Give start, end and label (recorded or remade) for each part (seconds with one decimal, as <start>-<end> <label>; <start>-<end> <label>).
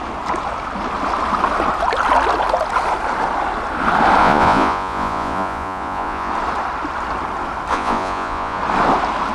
0.0-4.2 recorded; 4.2-6.3 remade; 6.3-7.7 recorded; 7.7-8.6 remade; 8.6-9.3 recorded